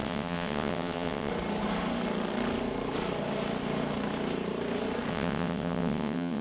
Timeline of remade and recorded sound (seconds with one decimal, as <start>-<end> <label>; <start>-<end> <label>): 0.0-1.3 remade; 1.3-5.1 recorded; 5.1-6.4 remade